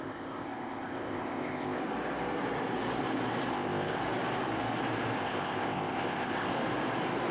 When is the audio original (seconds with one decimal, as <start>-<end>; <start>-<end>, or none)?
1.8-3.5; 4.0-5.2; 6.5-7.3